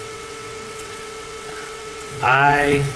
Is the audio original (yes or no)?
no